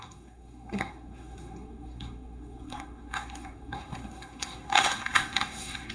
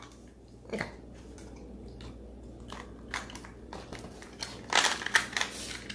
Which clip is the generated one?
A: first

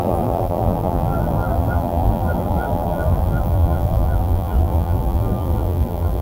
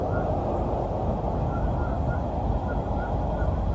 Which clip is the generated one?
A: first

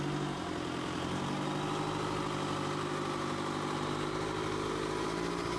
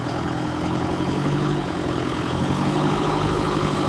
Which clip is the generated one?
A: second